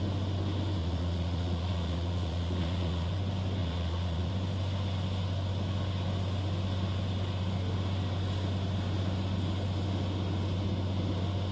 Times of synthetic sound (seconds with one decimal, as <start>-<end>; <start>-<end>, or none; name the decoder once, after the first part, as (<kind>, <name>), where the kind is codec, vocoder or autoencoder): 0.8-3.1 (vocoder, Vocos); 3.6-4.3